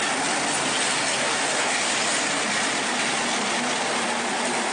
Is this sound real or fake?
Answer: real